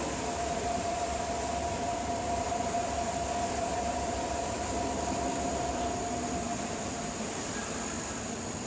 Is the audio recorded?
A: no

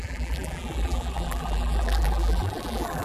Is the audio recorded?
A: no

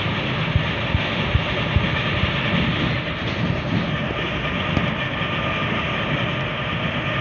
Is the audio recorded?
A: yes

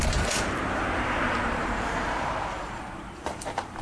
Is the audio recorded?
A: no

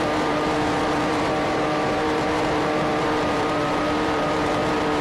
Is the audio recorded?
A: no